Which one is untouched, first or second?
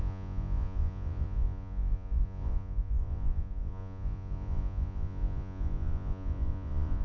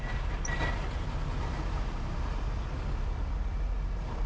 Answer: second